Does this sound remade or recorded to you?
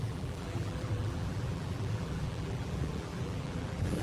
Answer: remade